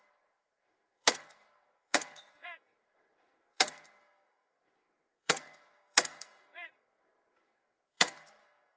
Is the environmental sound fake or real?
fake